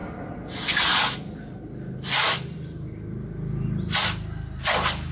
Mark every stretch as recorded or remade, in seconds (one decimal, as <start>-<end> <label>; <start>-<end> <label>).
0.0-5.1 recorded